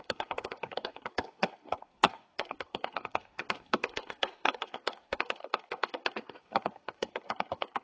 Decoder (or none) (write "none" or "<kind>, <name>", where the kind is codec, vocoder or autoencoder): codec, SNAC